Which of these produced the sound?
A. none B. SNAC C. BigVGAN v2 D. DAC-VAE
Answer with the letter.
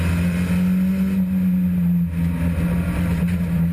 A